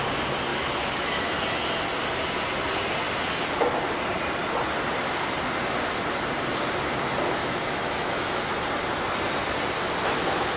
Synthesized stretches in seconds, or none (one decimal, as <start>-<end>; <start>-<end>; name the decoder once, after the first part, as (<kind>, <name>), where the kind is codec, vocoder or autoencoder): 0.5-1.2 (autoencoder, DAC-VAE); 7.4-8.4